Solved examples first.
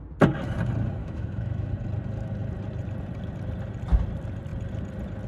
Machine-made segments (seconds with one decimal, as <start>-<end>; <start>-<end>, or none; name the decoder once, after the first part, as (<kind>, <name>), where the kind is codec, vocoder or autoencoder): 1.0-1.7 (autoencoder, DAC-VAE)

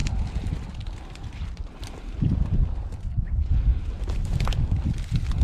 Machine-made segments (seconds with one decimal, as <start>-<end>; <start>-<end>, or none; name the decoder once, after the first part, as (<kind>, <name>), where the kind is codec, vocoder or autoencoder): none

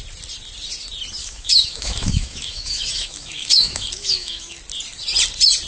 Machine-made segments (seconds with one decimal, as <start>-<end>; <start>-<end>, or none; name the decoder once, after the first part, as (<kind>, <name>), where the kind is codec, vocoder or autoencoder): 1.2-4.6 (autoencoder, DAC-VAE)

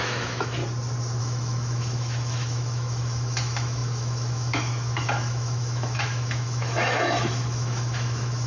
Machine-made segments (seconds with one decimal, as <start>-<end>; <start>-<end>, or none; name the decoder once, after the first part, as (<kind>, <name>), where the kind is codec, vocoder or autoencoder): 0.0-0.6 (autoencoder, DAC-VAE); 1.2-8.5